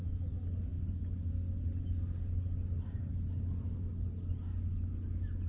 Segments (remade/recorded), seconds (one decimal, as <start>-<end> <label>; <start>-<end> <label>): 0.0-5.5 recorded